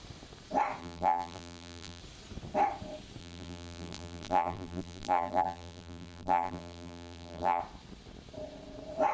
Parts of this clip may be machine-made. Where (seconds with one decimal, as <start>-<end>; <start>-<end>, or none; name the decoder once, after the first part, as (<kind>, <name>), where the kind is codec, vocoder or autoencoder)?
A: 0.8-2.0 (vocoder, BigVGAN v2); 3.2-7.6